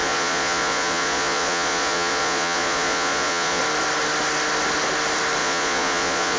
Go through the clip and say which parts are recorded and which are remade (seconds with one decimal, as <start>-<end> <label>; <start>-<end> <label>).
0.0-3.6 remade; 3.6-5.4 recorded; 5.4-6.4 remade